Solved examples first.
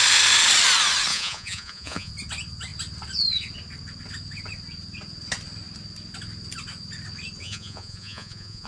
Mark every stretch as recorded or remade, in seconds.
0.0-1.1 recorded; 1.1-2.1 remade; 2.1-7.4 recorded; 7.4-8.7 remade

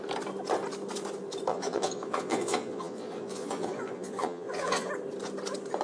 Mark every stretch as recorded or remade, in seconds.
0.0-1.5 recorded; 1.5-4.9 remade; 4.9-5.8 recorded

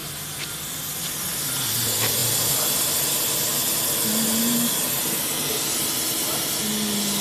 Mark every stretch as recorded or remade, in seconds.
0.0-7.2 recorded

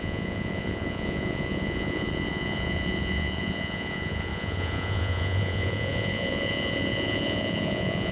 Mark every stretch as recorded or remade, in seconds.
0.0-8.1 remade